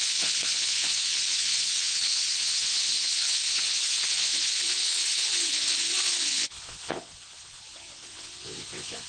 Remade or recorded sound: remade